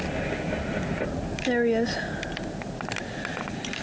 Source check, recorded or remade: recorded